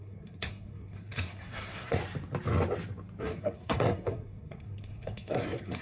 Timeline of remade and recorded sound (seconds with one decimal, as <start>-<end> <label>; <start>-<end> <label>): 0.0-2.0 remade; 2.0-3.2 recorded; 3.2-5.8 remade